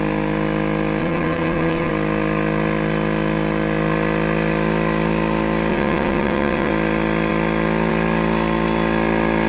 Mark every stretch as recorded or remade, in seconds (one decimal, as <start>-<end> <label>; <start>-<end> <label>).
0.0-1.0 recorded; 1.0-1.9 remade; 1.9-5.7 recorded; 5.7-6.7 remade; 6.7-9.5 recorded